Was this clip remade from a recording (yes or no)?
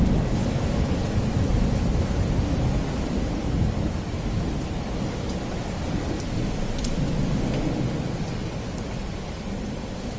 no